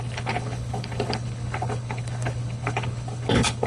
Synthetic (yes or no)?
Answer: yes